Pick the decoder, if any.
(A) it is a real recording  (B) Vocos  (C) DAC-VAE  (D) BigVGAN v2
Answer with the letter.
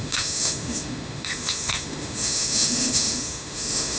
C